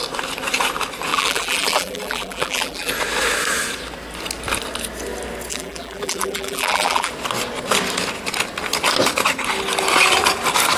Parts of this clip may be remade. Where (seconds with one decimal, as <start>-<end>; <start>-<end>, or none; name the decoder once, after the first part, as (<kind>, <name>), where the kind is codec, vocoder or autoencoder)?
1.1-2.9 (vocoder, BigVGAN v2); 5.5-7.1